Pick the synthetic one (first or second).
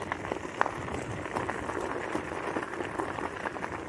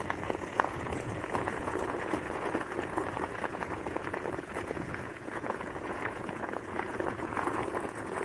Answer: second